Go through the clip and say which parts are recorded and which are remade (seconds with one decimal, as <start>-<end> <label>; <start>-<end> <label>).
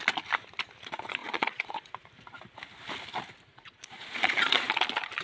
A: 0.0-1.2 recorded; 1.2-1.9 remade; 1.9-3.5 recorded; 3.5-4.7 remade; 4.7-5.2 recorded